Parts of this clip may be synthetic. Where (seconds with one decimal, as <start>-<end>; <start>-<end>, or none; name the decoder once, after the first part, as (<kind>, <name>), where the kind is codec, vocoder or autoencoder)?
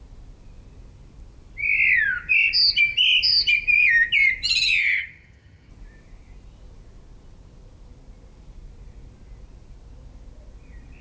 4.8-5.7 (vocoder, HiFi-GAN)